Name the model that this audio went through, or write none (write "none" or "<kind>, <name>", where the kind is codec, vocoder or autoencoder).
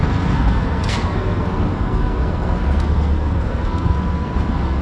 codec, SNAC